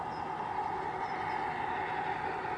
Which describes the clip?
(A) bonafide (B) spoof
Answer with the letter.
A